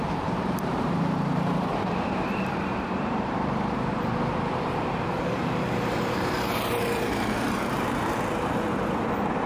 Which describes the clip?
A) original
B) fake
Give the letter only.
B